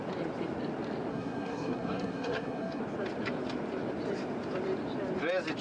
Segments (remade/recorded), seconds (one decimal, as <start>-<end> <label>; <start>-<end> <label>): 0.0-1.1 recorded; 1.1-2.8 remade; 2.8-5.6 recorded